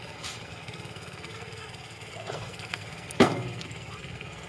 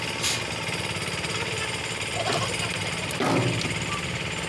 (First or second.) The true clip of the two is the second